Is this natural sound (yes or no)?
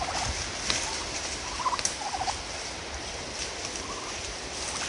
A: yes